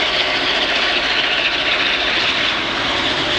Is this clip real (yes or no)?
yes